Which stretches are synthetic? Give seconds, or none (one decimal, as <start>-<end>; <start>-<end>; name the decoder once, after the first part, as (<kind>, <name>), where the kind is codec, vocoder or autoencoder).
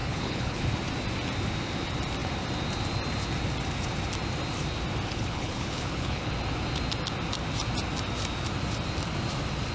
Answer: 0.0-0.6 (codec, HILCodec); 5.1-6.3